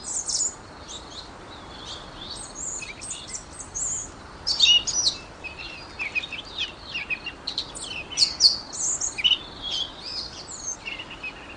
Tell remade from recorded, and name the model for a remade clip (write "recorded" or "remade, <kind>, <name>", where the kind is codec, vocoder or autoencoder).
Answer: recorded